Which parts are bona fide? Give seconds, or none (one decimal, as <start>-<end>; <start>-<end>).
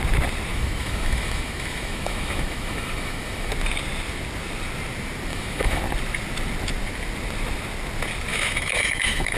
0.0-0.5; 3.5-5.3; 5.8-8.3